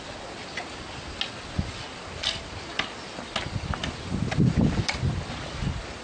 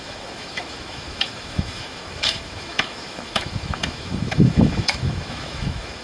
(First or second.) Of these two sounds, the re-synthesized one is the second